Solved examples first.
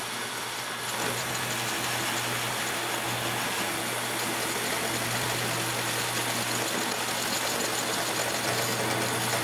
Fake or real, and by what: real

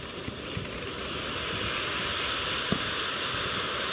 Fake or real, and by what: real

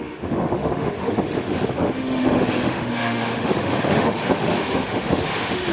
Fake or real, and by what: fake, autoencoder, DAC-VAE